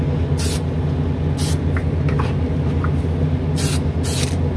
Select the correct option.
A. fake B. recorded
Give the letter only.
B